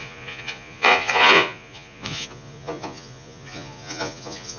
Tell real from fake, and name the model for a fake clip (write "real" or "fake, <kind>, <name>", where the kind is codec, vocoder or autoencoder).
fake, vocoder, Vocos